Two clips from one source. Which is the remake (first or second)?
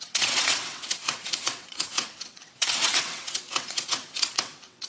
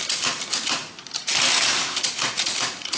first